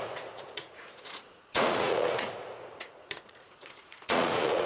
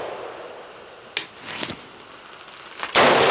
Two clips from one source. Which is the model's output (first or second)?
first